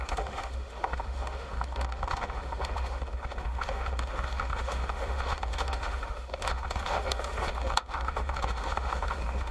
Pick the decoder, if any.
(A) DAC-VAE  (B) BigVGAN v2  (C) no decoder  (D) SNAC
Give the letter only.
A